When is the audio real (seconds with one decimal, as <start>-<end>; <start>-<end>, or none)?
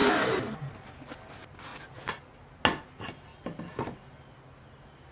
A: 0.0-5.1